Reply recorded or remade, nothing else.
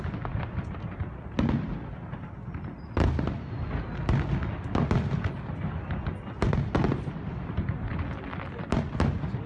recorded